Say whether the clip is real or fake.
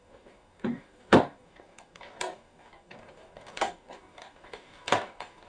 fake